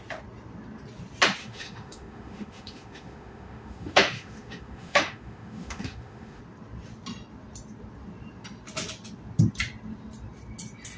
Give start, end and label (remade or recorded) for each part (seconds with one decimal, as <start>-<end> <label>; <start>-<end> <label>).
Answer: 0.0-1.4 recorded; 1.4-6.4 remade; 6.4-11.0 recorded